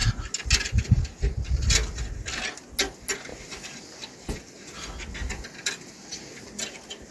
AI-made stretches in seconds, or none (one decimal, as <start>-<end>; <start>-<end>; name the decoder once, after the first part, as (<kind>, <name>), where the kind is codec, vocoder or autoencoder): none